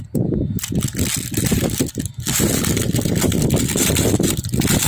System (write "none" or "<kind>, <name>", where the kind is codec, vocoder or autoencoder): none